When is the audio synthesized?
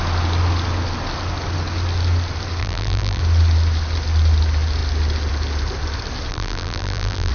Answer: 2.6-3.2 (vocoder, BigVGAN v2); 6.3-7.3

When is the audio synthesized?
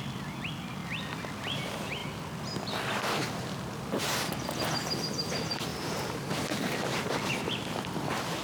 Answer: 5.7-6.2 (vocoder, BigVGAN v2)